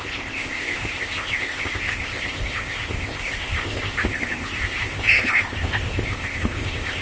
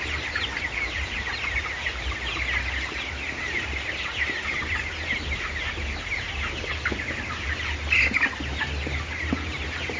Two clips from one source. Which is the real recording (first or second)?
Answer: second